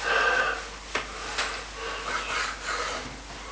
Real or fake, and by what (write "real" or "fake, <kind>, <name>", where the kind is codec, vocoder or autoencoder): real